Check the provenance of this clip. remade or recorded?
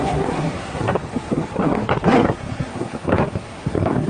remade